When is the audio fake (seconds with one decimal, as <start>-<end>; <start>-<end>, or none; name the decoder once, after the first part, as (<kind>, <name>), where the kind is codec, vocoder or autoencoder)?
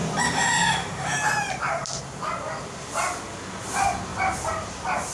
0.0-2.0 (vocoder, BigVGAN v2); 4.1-5.1